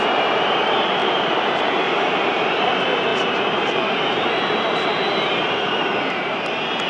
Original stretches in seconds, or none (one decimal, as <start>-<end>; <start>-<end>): none

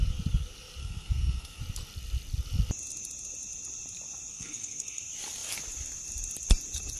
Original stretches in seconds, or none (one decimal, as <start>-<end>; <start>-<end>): 0.0-0.8; 1.6-4.3; 5.0-7.0

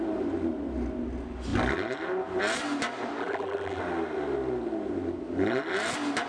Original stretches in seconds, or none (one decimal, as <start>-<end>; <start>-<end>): 0.0-3.2; 3.8-6.3

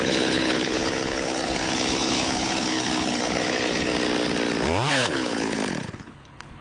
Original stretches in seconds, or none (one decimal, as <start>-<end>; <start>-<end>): 3.9-4.9

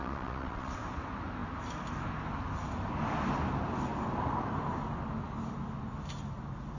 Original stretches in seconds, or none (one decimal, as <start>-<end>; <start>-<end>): 0.8-6.8

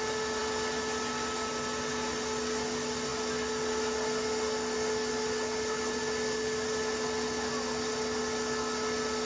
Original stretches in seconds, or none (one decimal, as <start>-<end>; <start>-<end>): 0.0-9.2

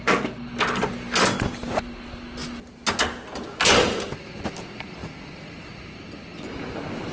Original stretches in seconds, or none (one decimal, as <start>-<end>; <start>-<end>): 0.0-5.0; 5.8-7.1

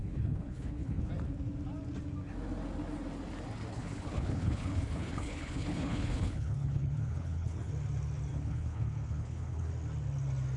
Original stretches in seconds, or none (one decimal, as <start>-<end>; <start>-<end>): 1.1-3.7; 7.7-8.3; 9.7-10.6